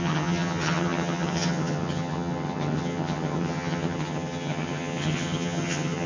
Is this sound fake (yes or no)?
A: yes